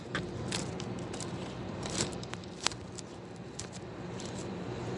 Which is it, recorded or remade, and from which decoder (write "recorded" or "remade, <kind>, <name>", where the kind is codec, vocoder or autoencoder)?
remade, vocoder, BigVGAN v2